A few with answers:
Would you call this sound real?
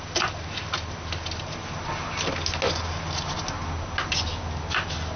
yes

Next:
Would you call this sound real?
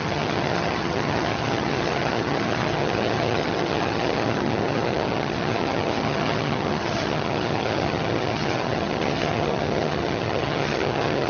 no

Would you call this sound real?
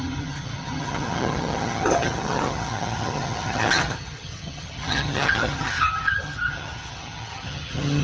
no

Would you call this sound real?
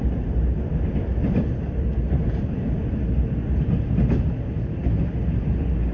yes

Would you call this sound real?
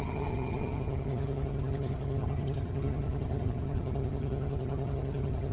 no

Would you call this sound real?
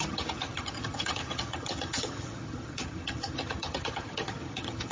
no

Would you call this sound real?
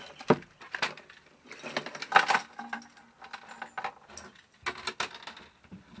yes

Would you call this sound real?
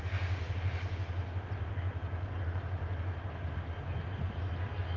yes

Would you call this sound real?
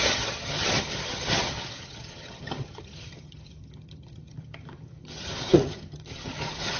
no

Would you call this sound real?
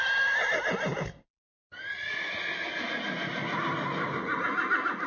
yes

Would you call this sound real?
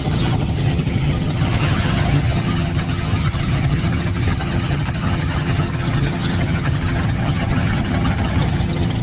no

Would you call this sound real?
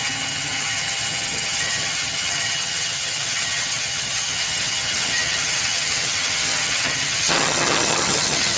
no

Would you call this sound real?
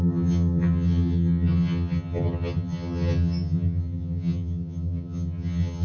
no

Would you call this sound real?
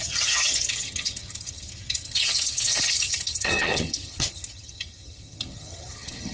no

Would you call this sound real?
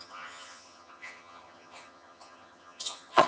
no